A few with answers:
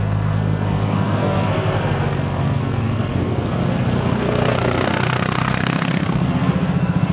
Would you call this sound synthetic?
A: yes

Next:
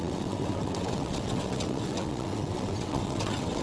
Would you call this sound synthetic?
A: yes